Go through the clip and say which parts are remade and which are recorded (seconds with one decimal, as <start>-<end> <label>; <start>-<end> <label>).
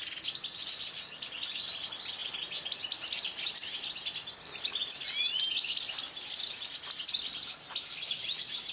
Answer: 0.0-8.7 recorded